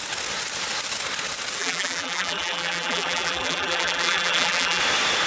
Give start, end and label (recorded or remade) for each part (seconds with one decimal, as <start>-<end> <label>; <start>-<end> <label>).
0.0-1.6 recorded; 1.6-4.8 remade; 4.8-5.3 recorded